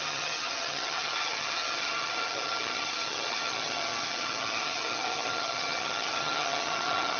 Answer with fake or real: fake